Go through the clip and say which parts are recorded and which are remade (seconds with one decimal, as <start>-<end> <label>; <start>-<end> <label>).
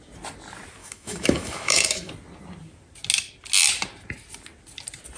0.0-0.8 recorded; 0.8-2.1 remade; 2.1-5.2 recorded